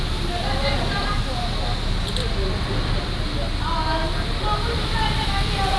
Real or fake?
real